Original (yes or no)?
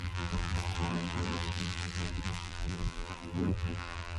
no